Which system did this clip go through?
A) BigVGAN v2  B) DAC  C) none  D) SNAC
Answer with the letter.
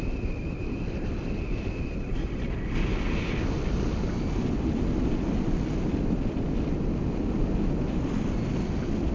C